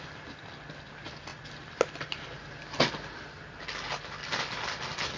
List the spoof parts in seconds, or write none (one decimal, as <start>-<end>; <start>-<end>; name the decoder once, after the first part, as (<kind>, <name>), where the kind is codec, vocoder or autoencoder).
none